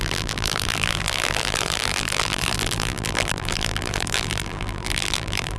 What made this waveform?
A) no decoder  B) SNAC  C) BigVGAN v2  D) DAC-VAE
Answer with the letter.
C